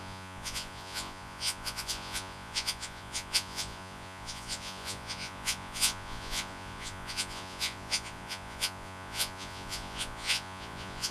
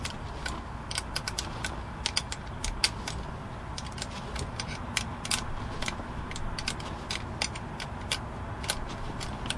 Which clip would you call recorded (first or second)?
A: second